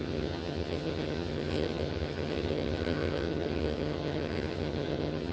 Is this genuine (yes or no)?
no